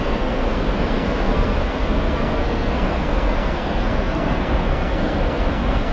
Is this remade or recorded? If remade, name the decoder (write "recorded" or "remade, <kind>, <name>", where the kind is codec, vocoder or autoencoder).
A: remade, codec, SNAC